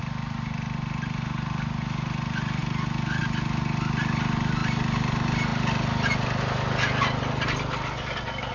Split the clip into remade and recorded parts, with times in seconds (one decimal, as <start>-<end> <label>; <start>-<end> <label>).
0.0-8.5 recorded